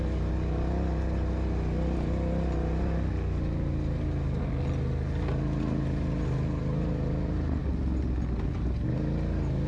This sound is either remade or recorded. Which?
recorded